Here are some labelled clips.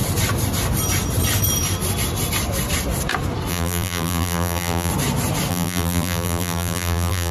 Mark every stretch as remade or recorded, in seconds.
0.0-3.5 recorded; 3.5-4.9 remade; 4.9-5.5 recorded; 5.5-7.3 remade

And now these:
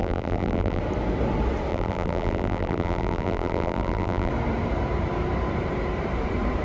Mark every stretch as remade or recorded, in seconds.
0.0-0.8 remade; 0.8-1.7 recorded; 1.7-4.3 remade; 4.3-6.6 recorded

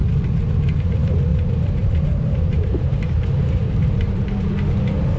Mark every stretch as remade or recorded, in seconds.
0.0-1.3 recorded; 1.3-4.2 remade; 4.2-5.2 recorded

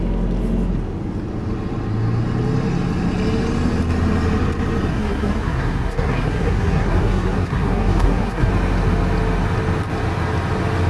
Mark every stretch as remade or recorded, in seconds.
0.0-4.9 recorded; 4.9-8.5 remade; 8.5-10.9 recorded

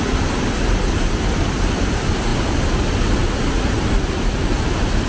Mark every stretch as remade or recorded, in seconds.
0.0-5.1 recorded